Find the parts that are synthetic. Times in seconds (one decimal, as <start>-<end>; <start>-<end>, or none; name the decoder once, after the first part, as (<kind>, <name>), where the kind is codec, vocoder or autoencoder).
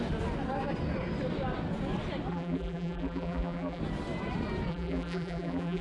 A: 2.3-3.8 (vocoder, BigVGAN v2); 4.7-5.8